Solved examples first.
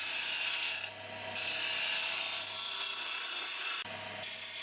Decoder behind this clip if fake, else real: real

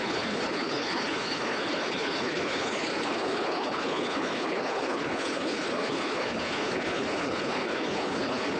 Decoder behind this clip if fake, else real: fake, codec, HILCodec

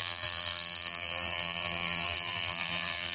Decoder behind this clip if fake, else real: fake, vocoder, BigVGAN v2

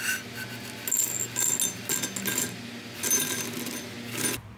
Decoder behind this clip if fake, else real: real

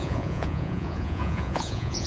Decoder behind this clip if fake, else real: fake, vocoder, Vocos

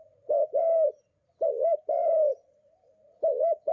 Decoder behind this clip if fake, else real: fake, vocoder, BigVGAN v2